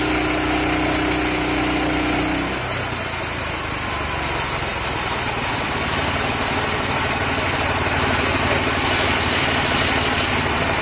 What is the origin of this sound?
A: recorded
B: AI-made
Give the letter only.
A